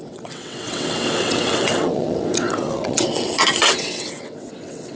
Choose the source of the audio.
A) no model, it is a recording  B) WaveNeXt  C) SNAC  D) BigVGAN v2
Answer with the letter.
B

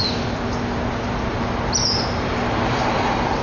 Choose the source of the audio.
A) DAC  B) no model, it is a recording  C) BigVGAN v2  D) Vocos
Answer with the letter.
B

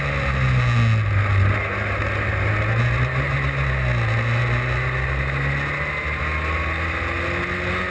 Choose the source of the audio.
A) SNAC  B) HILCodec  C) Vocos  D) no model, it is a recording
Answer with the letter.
D